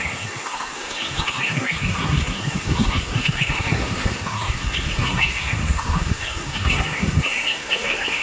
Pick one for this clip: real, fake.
fake